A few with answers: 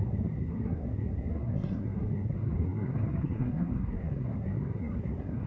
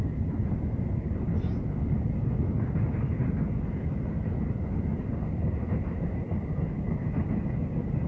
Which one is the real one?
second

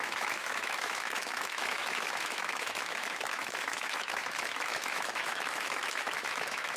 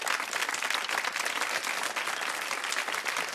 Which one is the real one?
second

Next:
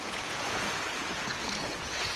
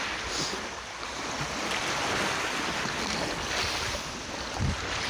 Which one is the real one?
second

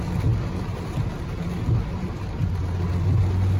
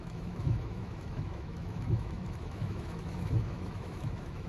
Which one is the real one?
first